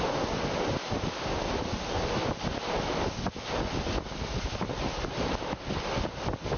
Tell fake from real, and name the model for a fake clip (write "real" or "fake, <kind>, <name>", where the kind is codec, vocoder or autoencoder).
real